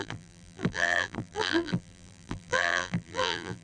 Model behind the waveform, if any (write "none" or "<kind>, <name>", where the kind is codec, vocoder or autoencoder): vocoder, BigVGAN v2